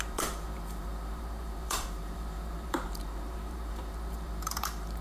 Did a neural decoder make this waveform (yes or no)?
yes